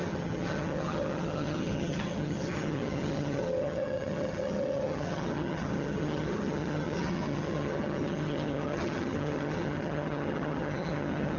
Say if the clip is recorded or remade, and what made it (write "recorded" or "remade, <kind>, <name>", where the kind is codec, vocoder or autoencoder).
remade, vocoder, HiFi-GAN